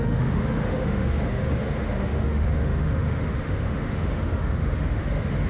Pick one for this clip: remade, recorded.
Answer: remade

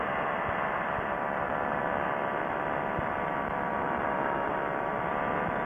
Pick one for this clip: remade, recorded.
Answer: recorded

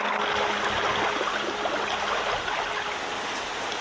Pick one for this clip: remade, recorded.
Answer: recorded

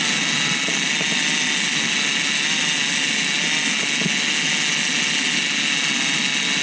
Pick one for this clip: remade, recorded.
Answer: recorded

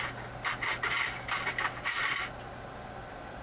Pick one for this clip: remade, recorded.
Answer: recorded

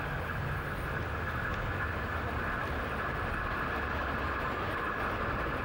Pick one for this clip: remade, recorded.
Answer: recorded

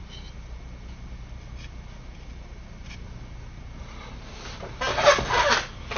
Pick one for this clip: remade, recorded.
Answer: recorded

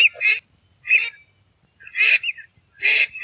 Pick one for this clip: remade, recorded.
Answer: recorded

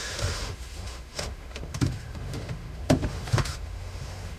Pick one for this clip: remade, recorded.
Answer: remade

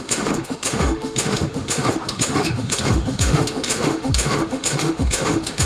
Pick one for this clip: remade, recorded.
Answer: remade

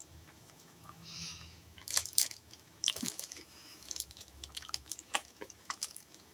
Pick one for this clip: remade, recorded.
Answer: remade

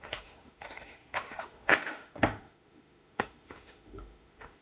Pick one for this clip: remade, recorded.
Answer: remade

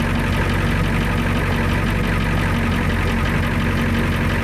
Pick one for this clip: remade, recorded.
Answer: recorded